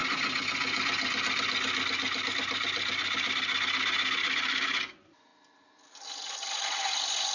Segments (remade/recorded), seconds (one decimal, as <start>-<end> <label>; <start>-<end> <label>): 0.0-7.3 recorded